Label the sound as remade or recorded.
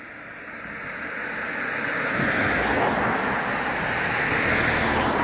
recorded